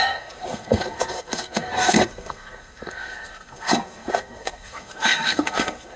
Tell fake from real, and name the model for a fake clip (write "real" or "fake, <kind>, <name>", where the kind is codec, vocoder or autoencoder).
fake, codec, SNAC